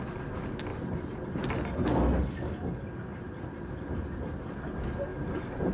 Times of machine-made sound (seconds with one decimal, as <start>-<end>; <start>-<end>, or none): 0.7-1.5; 3.1-4.6; 5.1-5.7